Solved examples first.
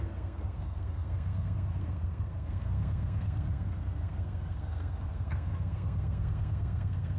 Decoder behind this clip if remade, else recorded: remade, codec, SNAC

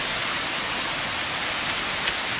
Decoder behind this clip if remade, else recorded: recorded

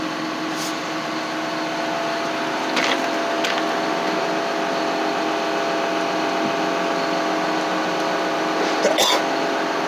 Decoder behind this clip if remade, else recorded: recorded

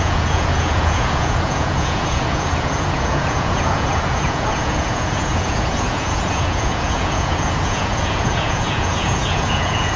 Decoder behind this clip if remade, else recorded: remade, vocoder, Vocos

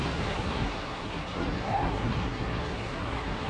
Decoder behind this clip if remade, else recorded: remade, codec, SNAC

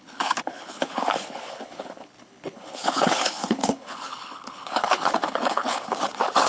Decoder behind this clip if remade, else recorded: remade, codec, HILCodec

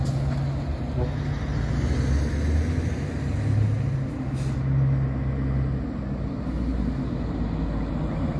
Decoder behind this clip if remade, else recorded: recorded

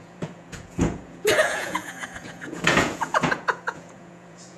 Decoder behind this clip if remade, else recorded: remade, vocoder, Vocos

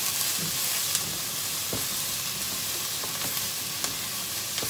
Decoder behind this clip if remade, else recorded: recorded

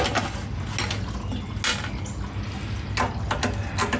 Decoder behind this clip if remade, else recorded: recorded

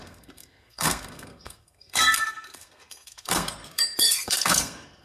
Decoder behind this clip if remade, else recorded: remade, codec, SNAC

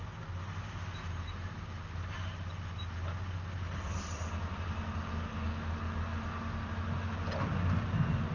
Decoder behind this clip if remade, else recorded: recorded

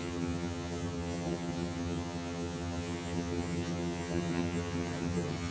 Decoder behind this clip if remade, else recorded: remade, vocoder, HiFi-GAN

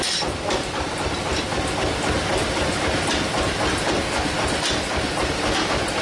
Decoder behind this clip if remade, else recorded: recorded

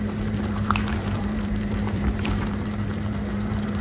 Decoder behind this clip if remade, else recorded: remade, vocoder, BigVGAN v2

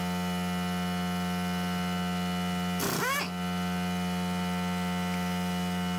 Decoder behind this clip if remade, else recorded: recorded